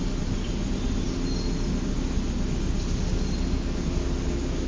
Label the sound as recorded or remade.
recorded